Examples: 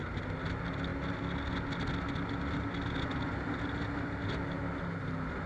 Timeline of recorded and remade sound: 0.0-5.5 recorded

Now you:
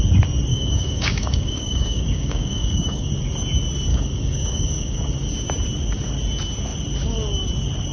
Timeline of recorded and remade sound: 0.0-0.5 recorded; 0.5-3.1 remade; 3.1-3.9 recorded; 3.9-5.0 remade; 5.0-7.9 recorded